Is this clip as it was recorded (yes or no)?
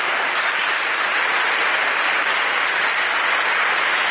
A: yes